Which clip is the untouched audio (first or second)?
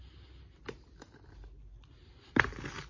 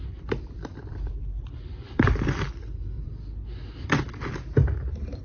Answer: first